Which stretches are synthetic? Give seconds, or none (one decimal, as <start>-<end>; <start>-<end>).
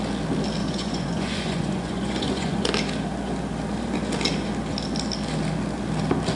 0.6-2.7